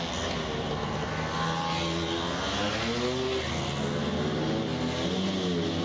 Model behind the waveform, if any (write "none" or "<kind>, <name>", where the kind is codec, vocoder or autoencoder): none